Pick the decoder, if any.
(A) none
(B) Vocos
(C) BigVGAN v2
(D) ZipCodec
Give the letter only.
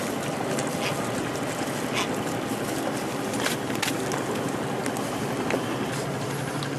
A